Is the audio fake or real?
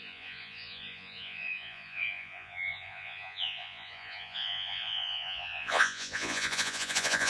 fake